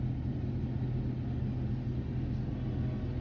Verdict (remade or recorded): recorded